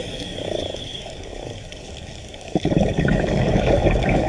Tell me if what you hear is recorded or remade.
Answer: remade